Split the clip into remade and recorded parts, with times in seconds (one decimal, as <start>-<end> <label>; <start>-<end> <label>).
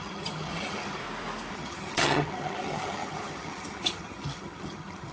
0.0-1.0 remade; 1.0-1.5 recorded; 1.5-5.1 remade